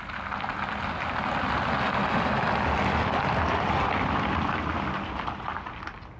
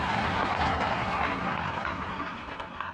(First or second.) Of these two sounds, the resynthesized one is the second